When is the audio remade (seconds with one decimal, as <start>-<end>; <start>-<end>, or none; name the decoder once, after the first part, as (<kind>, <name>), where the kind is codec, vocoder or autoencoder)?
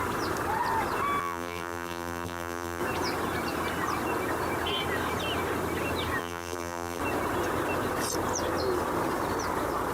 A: 1.2-2.8 (vocoder, BigVGAN v2); 6.2-7.0